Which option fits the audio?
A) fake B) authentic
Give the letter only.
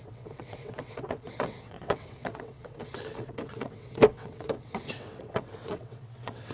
A